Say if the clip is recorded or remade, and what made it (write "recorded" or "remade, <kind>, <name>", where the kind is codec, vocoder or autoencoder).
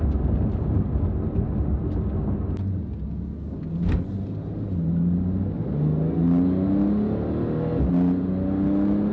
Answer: recorded